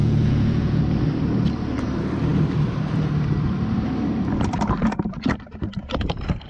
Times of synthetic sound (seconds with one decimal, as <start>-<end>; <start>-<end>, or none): 0.0-0.8